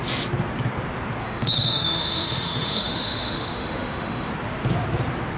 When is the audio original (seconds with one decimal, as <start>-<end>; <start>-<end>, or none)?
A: 0.0-1.2; 4.3-5.4